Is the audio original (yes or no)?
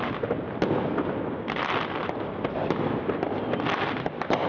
yes